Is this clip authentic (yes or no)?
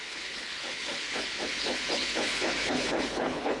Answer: no